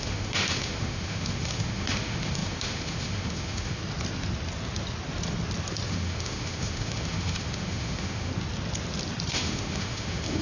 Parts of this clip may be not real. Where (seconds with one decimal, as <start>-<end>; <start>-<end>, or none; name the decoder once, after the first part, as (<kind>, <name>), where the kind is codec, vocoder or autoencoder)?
0.0-3.8 (autoencoder, DAC-VAE); 5.9-8.3; 9.3-10.4